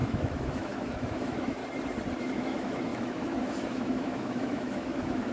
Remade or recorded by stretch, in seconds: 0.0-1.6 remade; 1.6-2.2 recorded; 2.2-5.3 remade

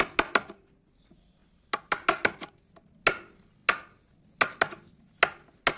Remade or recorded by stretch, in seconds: 0.0-5.8 recorded

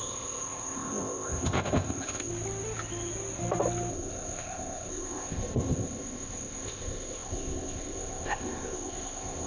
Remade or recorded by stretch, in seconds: 0.0-2.3 remade; 2.3-3.9 recorded; 3.9-9.5 remade